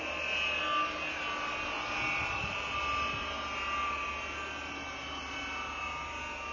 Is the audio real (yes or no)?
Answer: yes